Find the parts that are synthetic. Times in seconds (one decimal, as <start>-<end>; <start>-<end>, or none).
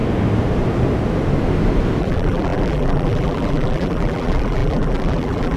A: 2.0-5.6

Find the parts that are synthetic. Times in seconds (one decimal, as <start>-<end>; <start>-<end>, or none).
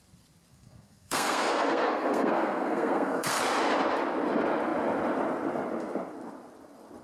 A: 0.5-3.4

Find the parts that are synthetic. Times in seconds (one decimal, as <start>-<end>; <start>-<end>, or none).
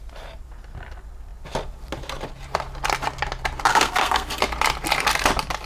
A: 3.7-4.4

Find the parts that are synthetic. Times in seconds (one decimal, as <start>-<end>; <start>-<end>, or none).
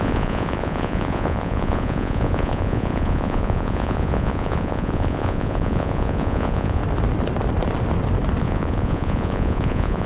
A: 0.0-6.8; 8.4-10.1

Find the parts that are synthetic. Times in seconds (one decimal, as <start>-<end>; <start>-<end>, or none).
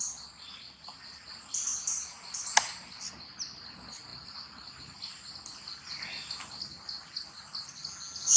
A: none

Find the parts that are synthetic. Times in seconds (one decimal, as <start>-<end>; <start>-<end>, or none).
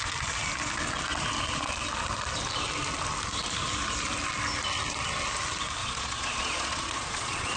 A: 5.8-7.6